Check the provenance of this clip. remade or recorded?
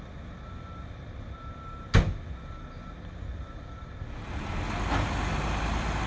recorded